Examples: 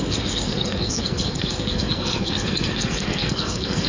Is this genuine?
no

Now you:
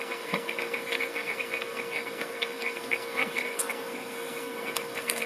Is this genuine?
no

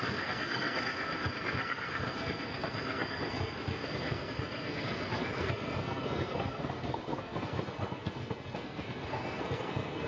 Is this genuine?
no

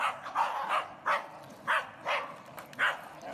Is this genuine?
yes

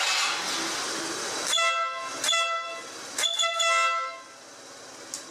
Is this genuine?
yes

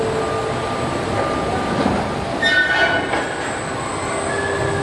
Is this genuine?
yes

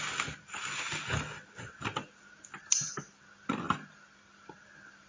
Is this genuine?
yes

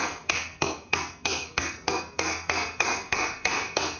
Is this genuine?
no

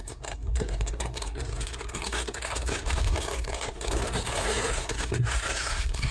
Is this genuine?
no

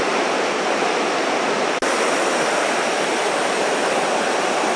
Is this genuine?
yes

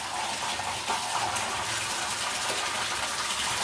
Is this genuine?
yes